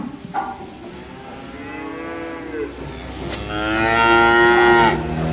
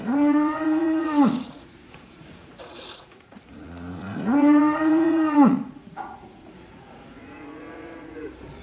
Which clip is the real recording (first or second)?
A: first